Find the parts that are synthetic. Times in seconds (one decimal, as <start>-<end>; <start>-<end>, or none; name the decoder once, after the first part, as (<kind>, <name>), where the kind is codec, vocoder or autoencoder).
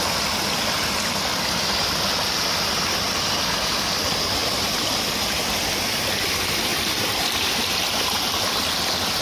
6.7-8.7 (vocoder, BigVGAN v2)